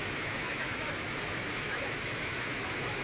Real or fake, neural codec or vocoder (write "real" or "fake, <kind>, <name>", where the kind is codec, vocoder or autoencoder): fake, autoencoder, DAC-VAE